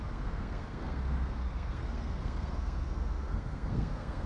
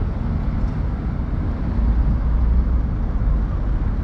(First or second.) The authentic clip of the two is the second